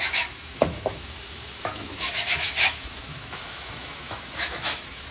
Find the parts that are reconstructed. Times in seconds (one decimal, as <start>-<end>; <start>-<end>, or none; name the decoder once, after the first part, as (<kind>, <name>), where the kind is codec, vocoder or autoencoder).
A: 0.0-5.1 (autoencoder, DAC-VAE)